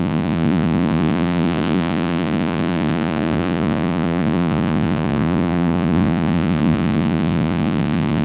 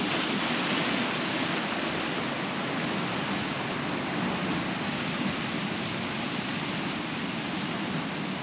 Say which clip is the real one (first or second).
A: second